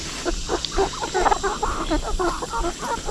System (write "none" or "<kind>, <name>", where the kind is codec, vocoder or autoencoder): none